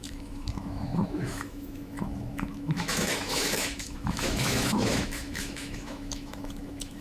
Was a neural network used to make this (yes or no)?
yes